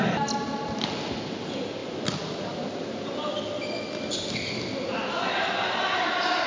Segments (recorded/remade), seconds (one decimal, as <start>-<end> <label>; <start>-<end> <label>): 0.0-6.5 recorded

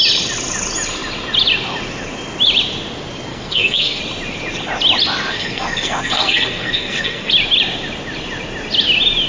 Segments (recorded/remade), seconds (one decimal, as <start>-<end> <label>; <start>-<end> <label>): 0.0-3.3 recorded; 3.3-4.0 remade; 4.0-5.3 recorded; 5.3-7.3 remade; 7.3-9.3 recorded